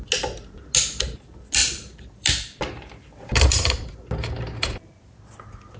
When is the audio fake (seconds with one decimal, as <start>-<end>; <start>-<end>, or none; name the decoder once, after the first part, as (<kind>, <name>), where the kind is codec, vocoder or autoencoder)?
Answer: 1.6-5.1 (vocoder, BigVGAN v2)